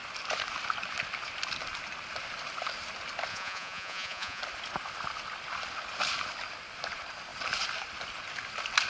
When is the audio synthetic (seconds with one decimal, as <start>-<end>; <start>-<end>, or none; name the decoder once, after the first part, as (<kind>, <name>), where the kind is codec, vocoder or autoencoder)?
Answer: 3.3-4.4 (vocoder, Vocos)